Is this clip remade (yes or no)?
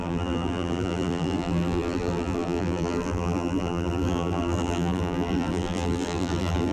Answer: yes